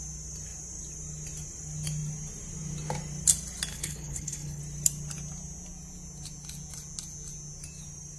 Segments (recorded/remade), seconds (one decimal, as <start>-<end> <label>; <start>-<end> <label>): 0.0-3.7 recorded; 3.7-4.6 remade; 4.6-8.2 recorded